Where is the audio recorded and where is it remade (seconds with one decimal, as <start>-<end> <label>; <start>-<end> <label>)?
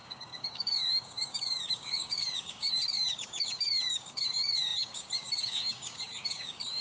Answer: 0.0-6.8 remade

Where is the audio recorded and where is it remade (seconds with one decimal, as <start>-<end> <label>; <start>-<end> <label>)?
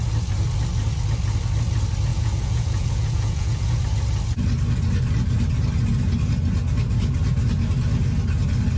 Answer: 0.0-2.1 recorded; 2.1-3.8 remade; 3.8-8.8 recorded